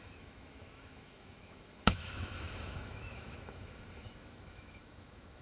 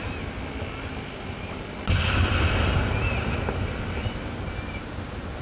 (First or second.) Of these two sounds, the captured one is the second